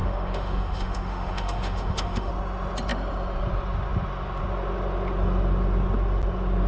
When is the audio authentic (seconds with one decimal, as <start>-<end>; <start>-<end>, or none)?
2.3-6.7